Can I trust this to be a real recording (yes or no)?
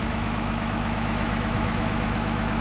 no